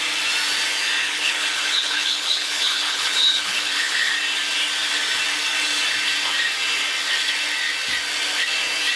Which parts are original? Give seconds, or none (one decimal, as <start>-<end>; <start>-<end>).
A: 0.0-1.0; 4.1-9.0